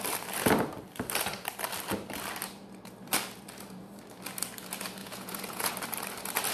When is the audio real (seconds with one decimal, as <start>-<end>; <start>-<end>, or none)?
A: 0.0-5.0; 5.7-6.5